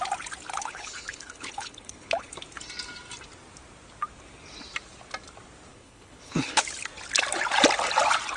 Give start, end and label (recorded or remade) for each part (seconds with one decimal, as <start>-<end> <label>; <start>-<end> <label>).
0.0-0.5 recorded; 0.5-2.3 remade; 2.3-5.7 recorded; 5.7-6.6 remade; 6.6-8.4 recorded